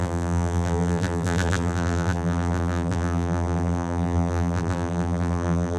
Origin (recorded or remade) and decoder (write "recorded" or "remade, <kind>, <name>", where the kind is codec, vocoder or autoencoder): remade, vocoder, BigVGAN v2